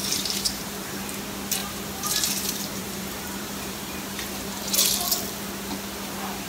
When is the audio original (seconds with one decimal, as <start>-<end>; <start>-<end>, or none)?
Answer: 1.2-1.6; 4.7-6.5